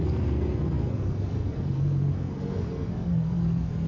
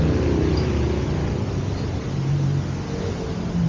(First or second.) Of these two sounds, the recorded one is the second